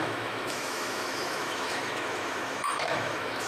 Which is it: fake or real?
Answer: fake